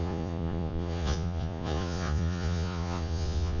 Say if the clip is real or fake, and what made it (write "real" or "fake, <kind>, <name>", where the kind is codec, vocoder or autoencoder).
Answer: fake, vocoder, Vocos